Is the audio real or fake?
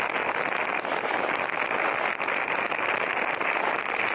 real